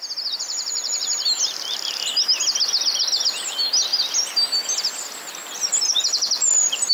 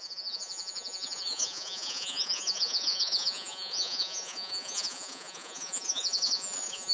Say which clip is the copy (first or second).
second